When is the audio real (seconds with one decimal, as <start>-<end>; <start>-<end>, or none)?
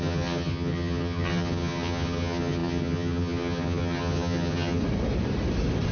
4.8-5.9